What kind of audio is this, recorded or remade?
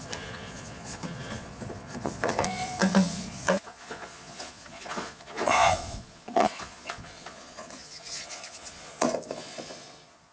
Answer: remade